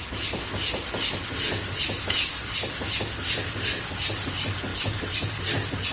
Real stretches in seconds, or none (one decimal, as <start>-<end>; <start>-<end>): 0.0-5.9